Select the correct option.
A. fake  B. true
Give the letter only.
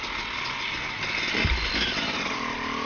B